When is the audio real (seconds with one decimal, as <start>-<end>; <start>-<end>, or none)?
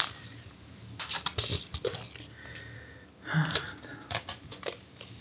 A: 1.5-4.6